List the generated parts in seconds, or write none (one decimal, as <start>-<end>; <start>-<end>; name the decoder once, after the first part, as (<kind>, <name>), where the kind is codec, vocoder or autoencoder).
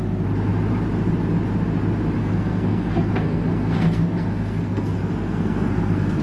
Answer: 2.2-6.2 (codec, SNAC)